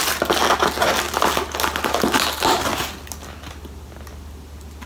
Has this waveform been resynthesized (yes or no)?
no